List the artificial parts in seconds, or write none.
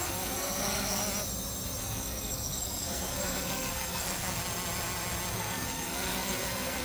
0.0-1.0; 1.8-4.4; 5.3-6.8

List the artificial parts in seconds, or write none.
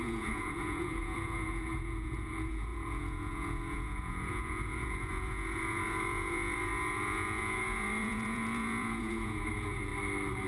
0.0-9.9